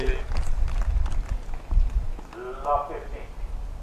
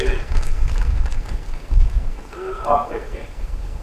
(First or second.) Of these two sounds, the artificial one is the second